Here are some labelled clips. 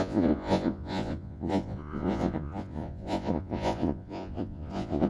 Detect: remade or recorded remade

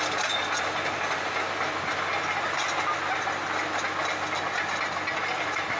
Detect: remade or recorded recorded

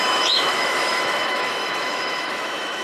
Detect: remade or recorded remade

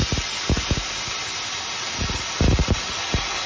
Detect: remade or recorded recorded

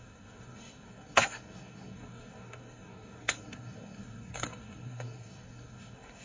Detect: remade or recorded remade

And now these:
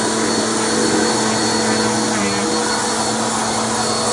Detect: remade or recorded recorded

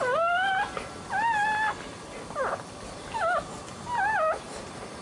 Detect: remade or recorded recorded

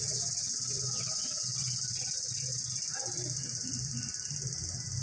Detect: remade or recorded recorded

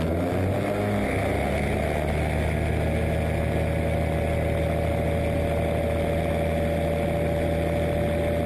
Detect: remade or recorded recorded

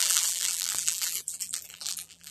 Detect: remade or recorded remade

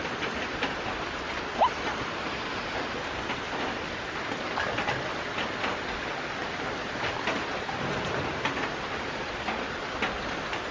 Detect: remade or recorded recorded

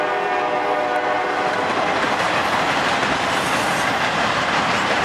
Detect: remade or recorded recorded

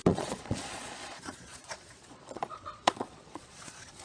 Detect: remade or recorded remade